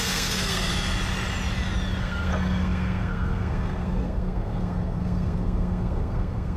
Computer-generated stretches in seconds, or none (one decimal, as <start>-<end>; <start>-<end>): 0.0-0.7; 2.0-6.6